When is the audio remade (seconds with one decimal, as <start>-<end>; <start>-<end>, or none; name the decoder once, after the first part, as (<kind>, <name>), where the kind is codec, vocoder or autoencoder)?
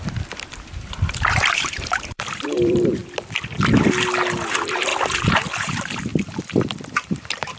0.0-3.0 (vocoder, BigVGAN v2); 4.5-4.9; 5.6-6.1; 6.9-7.6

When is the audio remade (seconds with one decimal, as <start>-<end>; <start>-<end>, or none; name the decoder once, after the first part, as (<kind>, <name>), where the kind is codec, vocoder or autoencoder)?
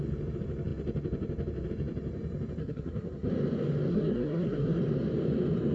2.6-3.3 (codec, SNAC); 3.9-4.8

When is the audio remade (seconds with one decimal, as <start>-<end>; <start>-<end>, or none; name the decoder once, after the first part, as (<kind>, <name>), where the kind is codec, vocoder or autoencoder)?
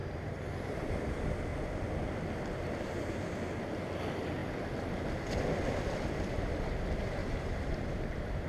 0.0-1.0 (vocoder, BigVGAN v2); 7.2-8.1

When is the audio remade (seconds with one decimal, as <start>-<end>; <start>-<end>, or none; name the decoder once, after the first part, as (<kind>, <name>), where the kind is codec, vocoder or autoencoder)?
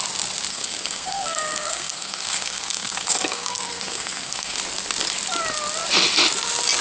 0.5-4.6 (codec, SNAC)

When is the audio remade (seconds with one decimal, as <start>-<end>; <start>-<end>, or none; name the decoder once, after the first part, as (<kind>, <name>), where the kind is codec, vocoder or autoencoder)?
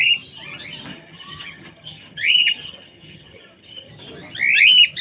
0.9-3.9 (vocoder, HiFi-GAN)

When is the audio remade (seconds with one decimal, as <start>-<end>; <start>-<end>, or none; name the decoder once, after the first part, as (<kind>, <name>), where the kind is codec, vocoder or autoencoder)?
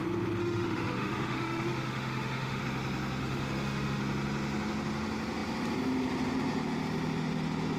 0.4-2.6 (autoencoder, DAC-VAE); 3.2-4.0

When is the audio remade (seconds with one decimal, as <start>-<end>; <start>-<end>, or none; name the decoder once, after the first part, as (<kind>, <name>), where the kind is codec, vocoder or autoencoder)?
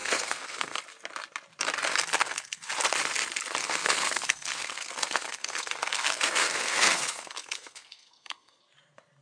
0.0-0.8 (codec, SNAC); 2.2-2.7; 3.6-8.6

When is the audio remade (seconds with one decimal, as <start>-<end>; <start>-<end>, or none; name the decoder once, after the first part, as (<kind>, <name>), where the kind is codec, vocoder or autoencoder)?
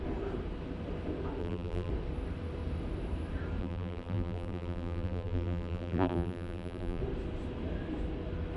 1.4-1.9 (vocoder, BigVGAN v2); 3.6-7.0